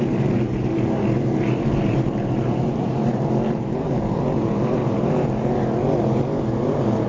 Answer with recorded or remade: remade